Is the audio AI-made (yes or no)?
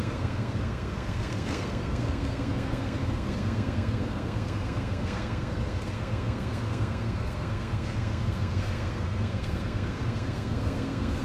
yes